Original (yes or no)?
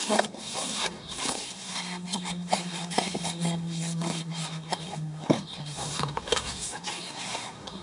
no